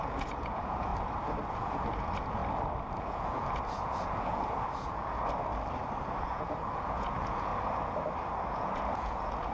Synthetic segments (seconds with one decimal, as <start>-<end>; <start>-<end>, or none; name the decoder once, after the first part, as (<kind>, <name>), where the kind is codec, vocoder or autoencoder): 0.0-0.9 (vocoder, Vocos); 1.5-2.4; 3.0-5.5; 6.2-7.5; 8.5-9.5